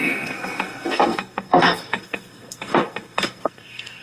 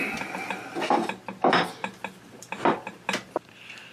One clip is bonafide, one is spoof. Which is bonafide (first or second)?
second